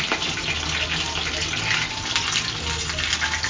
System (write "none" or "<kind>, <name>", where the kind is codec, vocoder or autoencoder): none